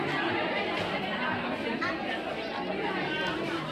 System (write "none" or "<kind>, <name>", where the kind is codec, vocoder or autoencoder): none